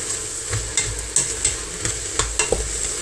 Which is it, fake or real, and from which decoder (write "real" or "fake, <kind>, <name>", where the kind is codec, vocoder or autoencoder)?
real